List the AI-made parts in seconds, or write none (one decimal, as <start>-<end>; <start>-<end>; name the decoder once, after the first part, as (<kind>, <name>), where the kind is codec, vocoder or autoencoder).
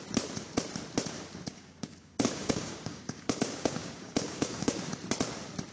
1.5-4.9 (codec, DAC)